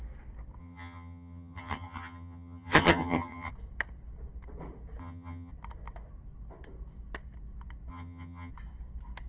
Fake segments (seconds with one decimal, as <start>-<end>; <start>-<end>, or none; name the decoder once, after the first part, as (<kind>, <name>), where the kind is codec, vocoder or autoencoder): 0.6-3.5 (vocoder, HiFi-GAN); 5.0-5.5; 7.9-8.5

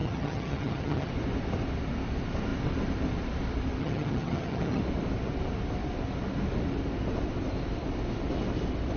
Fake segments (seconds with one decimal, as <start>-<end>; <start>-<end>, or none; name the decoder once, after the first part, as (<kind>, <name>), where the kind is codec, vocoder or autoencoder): 0.0-1.1 (vocoder, HiFi-GAN); 3.8-4.8

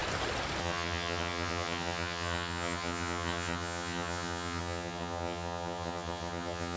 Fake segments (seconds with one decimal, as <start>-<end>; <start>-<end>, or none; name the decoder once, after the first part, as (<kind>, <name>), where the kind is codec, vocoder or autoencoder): 0.6-6.8 (vocoder, HiFi-GAN)

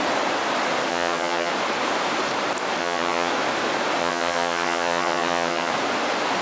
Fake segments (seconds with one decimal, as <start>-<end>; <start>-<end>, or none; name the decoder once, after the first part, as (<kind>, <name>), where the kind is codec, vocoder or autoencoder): 0.9-1.5 (vocoder, HiFi-GAN); 2.8-3.3; 4.0-5.7

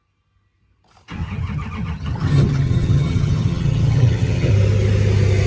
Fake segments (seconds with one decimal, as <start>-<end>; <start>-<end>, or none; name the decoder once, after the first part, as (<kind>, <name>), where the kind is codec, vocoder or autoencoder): 1.2-4.5 (vocoder, HiFi-GAN)